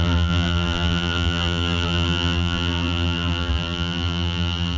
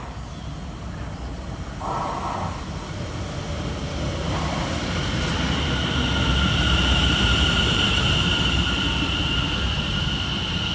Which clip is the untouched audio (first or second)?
second